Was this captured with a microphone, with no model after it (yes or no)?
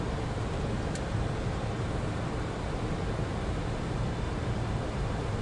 no